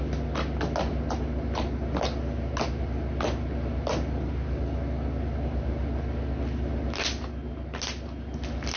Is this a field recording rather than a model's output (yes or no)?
yes